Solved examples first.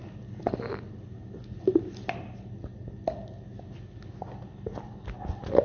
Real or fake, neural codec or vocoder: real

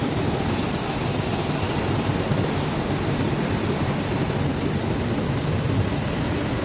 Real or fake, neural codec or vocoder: real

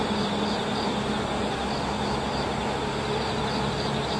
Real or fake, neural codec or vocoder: real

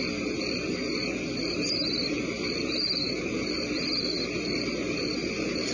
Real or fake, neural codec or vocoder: fake, vocoder, BigVGAN v2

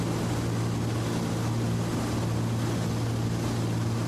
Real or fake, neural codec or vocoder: real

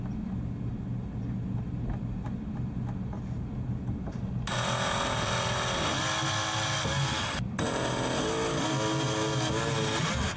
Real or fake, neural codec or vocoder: real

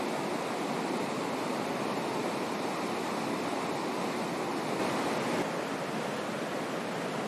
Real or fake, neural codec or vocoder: real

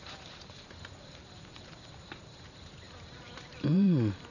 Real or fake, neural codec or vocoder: fake, vocoder, BigVGAN v2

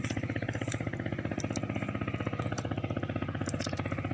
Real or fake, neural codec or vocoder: real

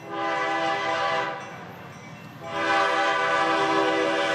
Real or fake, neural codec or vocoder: real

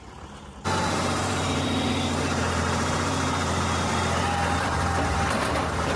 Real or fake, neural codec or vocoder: fake, vocoder, BigVGAN v2